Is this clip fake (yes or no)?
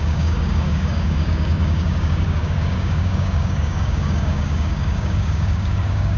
yes